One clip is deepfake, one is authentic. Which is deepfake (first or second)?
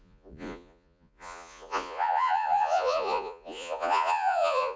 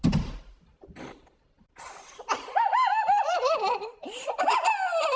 first